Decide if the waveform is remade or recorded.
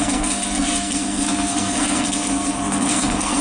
remade